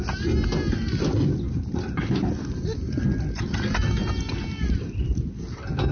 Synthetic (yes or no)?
no